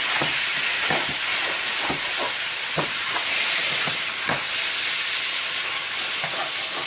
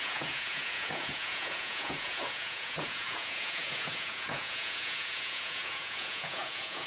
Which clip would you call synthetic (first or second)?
second